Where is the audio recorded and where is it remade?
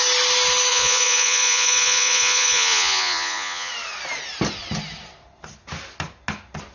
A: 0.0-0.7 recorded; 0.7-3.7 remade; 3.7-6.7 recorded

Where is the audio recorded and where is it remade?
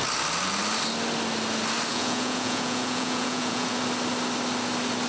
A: 0.0-1.9 recorded; 1.9-3.8 remade; 3.8-5.1 recorded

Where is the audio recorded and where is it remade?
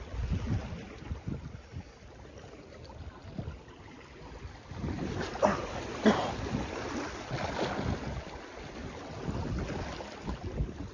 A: 0.0-10.9 recorded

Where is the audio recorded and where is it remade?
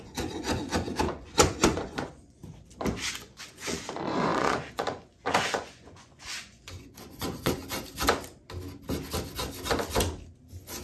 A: 0.0-2.4 remade; 2.4-3.1 recorded; 3.1-7.6 remade; 7.6-10.8 recorded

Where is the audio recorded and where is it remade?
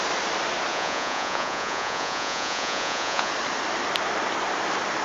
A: 0.0-0.7 recorded; 0.7-3.3 remade; 3.3-5.0 recorded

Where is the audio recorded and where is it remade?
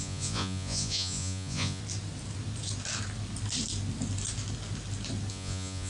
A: 0.0-1.8 remade; 1.8-5.3 recorded; 5.3-5.9 remade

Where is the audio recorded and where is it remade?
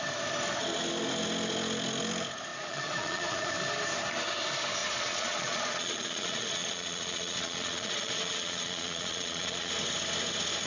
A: 0.0-2.5 recorded; 2.5-3.5 remade; 3.5-4.8 recorded; 4.8-9.7 remade; 9.7-10.7 recorded